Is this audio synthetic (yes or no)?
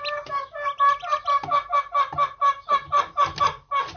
no